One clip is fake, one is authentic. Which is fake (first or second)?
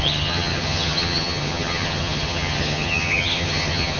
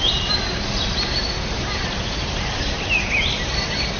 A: first